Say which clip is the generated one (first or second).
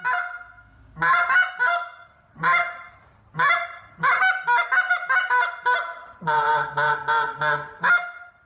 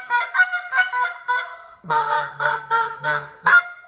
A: second